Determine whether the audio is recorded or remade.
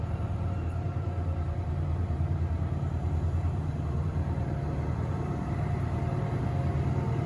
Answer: remade